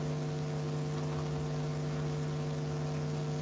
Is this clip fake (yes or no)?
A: no